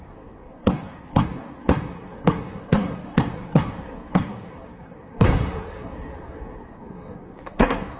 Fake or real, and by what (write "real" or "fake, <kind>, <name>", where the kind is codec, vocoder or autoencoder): fake, codec, SNAC